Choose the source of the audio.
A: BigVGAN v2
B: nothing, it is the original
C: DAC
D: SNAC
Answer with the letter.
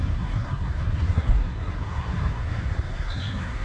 D